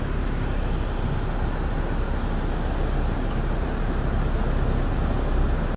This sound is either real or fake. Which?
real